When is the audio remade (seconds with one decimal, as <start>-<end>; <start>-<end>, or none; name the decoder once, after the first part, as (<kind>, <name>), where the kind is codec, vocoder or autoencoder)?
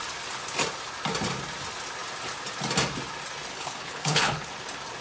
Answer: 3.5-4.5 (codec, HILCodec)